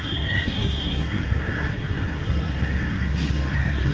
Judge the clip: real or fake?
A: fake